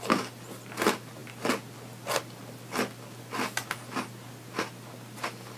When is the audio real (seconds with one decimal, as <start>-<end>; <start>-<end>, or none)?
0.0-5.6